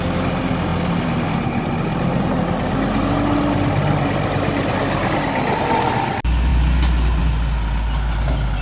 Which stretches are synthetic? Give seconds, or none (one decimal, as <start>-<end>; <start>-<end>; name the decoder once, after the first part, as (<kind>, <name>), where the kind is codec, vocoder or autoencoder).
none

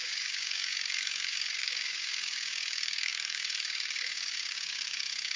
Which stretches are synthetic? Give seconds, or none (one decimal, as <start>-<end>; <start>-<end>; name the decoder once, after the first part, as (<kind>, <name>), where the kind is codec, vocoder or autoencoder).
0.0-5.4 (codec, DAC)